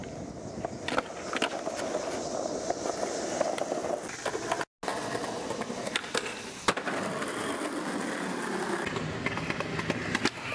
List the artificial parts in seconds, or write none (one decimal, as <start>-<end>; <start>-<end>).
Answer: none